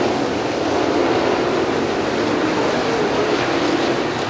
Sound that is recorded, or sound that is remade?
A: recorded